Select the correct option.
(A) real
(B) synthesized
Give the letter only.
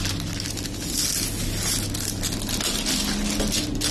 A